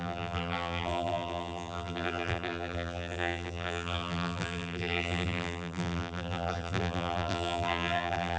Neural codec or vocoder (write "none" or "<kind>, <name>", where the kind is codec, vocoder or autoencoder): vocoder, BigVGAN v2